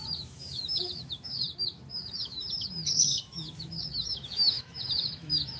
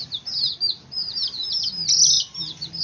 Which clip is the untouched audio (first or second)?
second